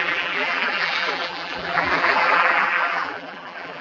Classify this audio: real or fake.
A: fake